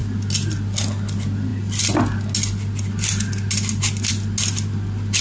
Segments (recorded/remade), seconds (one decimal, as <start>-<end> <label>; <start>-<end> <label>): 0.0-5.2 recorded